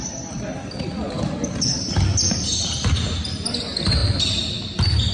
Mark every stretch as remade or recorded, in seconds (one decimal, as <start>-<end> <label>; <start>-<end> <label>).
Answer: 0.0-2.5 recorded; 2.5-3.1 remade; 3.1-4.0 recorded; 4.0-4.5 remade; 4.5-5.1 recorded